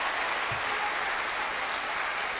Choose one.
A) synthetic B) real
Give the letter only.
B